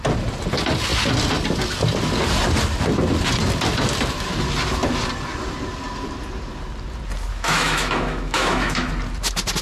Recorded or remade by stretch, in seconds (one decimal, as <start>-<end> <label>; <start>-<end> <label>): 0.0-7.3 recorded; 7.3-8.9 remade; 8.9-9.6 recorded